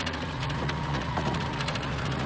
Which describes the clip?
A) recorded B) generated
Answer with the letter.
B